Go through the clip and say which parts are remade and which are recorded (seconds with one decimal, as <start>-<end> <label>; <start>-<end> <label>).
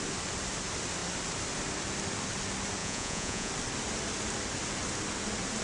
0.0-2.8 recorded; 2.8-3.5 remade; 3.5-5.6 recorded